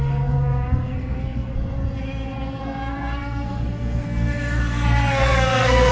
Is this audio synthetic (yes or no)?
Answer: yes